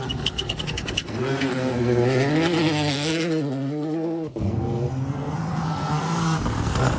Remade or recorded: remade